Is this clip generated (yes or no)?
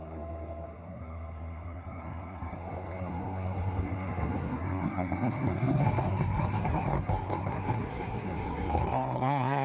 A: yes